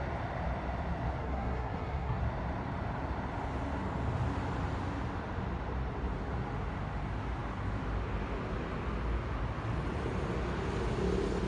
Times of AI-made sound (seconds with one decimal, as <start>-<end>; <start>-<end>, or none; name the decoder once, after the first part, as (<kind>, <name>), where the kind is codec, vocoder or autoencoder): 1.2-2.2 (codec, SNAC)